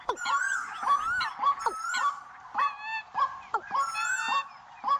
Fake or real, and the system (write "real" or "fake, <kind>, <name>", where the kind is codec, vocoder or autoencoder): real